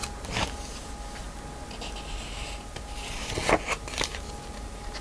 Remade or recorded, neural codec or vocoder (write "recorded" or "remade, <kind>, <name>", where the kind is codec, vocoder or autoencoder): recorded